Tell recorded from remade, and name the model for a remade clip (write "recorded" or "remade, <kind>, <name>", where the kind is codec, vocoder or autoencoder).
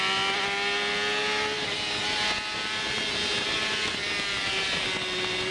recorded